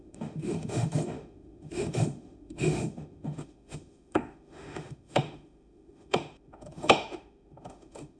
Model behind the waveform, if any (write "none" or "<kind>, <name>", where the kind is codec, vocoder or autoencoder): autoencoder, DAC-VAE